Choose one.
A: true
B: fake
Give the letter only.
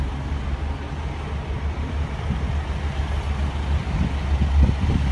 A